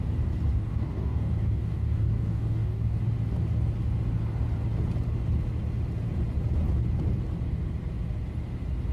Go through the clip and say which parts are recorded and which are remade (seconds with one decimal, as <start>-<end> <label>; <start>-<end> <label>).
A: 0.0-0.5 recorded; 0.5-3.0 remade; 3.0-8.9 recorded